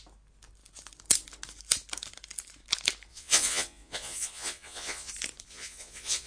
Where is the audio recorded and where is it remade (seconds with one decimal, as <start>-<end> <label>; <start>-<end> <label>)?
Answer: 0.0-3.1 recorded; 3.1-5.1 remade; 5.1-5.5 recorded; 5.5-6.3 remade